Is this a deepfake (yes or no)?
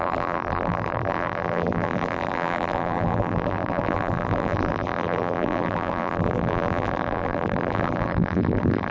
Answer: yes